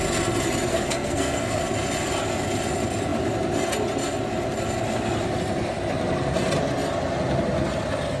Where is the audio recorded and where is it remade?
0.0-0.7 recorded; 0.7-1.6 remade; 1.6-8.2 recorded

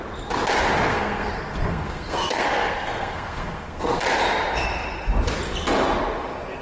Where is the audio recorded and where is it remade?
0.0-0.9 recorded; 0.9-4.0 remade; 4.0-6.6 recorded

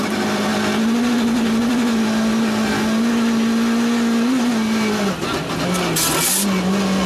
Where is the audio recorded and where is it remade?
0.0-7.1 recorded

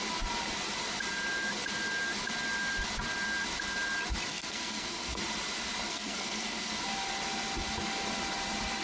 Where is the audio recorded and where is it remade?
0.0-4.3 recorded; 4.3-5.2 remade; 5.2-5.9 recorded; 5.9-6.7 remade; 6.7-8.8 recorded

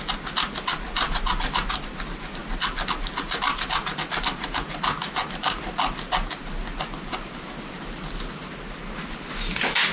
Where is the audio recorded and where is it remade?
0.0-9.9 recorded